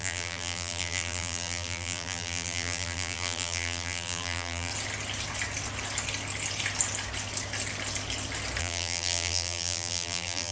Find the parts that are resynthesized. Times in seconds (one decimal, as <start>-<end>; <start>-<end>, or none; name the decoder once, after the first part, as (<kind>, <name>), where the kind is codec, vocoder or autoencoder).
0.0-4.7 (vocoder, BigVGAN v2); 8.6-10.5